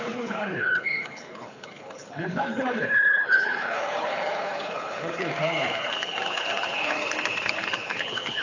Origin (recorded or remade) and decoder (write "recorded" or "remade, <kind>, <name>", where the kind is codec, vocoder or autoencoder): remade, codec, HILCodec